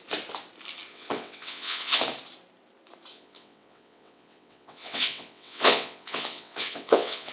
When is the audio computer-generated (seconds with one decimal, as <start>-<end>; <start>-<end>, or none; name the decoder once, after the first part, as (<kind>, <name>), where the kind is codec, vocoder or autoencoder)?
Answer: 0.9-2.0 (vocoder, WaveNeXt); 3.1-7.3